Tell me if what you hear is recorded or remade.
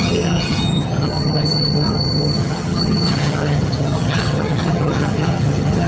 remade